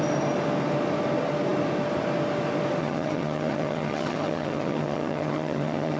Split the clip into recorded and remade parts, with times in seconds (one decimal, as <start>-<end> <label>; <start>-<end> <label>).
0.0-2.8 recorded; 2.8-6.0 remade